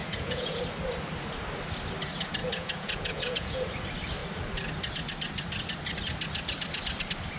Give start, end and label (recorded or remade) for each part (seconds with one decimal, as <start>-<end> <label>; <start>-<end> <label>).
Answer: 0.0-0.6 remade; 0.6-2.4 recorded; 2.4-3.7 remade; 3.7-7.4 recorded